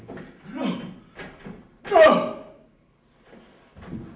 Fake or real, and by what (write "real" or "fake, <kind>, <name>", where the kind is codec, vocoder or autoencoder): real